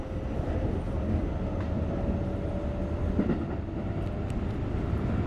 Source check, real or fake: real